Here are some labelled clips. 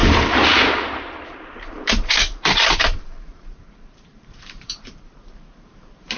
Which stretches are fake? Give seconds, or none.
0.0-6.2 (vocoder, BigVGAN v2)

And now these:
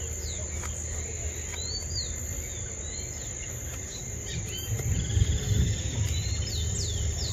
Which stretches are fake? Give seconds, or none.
none

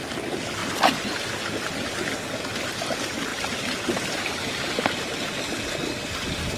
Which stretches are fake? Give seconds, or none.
3.3-4.7 (vocoder, BigVGAN v2)

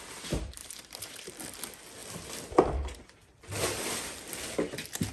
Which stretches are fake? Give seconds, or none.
0.6-1.3 (vocoder, BigVGAN v2)